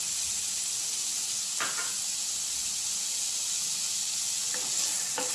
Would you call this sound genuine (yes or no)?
yes